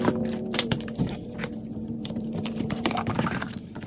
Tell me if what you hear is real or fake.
fake